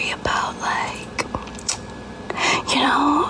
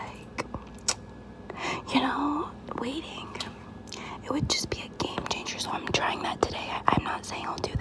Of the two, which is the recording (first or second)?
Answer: second